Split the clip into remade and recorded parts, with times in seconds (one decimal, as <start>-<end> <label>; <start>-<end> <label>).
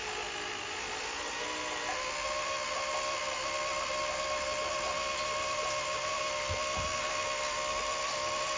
0.0-8.6 recorded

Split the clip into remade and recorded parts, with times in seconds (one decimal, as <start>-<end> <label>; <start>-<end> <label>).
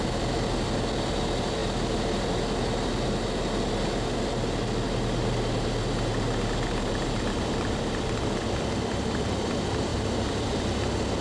0.0-1.6 remade; 1.6-6.9 recorded; 6.9-11.2 remade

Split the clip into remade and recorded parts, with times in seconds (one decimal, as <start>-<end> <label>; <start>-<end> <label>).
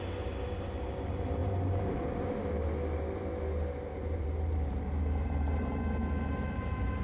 0.0-1.4 recorded; 1.4-2.3 remade; 2.3-3.9 recorded; 3.9-4.8 remade; 4.8-5.2 recorded; 5.2-5.8 remade; 5.8-7.0 recorded